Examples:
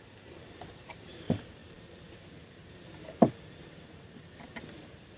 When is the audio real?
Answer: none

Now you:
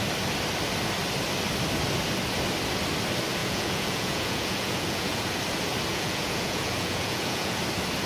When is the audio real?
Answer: 0.0-3.4; 5.3-5.9; 7.6-8.1